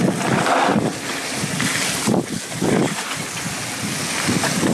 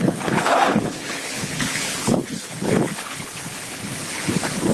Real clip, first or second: first